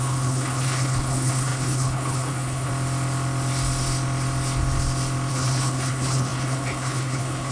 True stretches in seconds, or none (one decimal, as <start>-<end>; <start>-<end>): 2.7-5.3